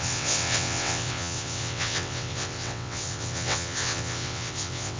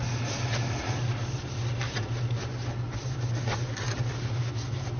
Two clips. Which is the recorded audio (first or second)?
second